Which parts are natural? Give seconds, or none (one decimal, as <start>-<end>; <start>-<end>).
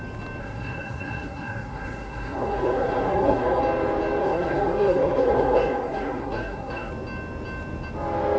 0.0-0.4; 3.6-4.2; 6.9-8.4